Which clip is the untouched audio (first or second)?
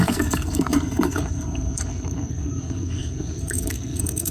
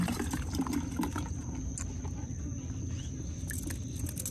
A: second